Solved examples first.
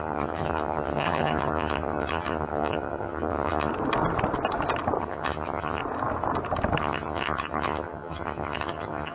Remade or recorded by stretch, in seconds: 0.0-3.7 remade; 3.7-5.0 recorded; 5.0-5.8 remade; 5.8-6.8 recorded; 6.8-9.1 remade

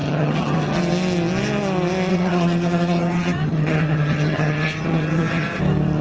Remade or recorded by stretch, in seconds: 0.0-0.8 remade; 0.8-2.1 recorded; 2.1-5.6 remade; 5.6-6.0 recorded

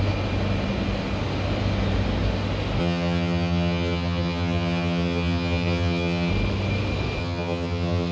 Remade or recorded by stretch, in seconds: 0.0-2.8 recorded; 2.8-6.3 remade; 6.3-7.2 recorded; 7.2-8.1 remade

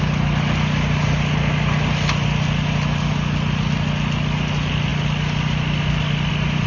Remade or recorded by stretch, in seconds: 0.0-6.7 recorded

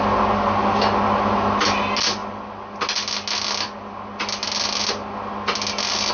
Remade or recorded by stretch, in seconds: 0.0-6.1 recorded